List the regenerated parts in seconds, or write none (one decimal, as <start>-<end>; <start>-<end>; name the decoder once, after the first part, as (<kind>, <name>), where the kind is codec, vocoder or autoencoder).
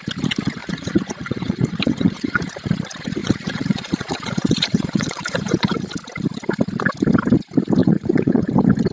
0.6-2.5 (vocoder, Vocos); 3.2-5.9; 7.8-8.5